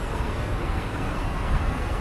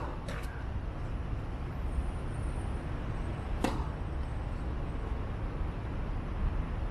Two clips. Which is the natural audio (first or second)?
second